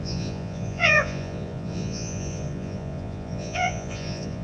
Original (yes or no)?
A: no